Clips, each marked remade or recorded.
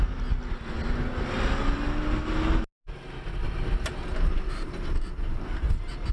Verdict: recorded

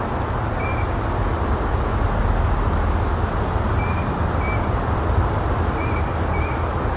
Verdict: recorded